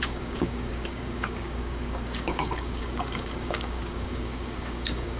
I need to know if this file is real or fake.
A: fake